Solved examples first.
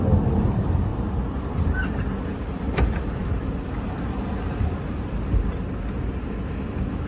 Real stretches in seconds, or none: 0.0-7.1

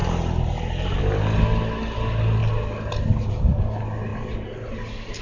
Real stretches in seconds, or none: 0.0-5.2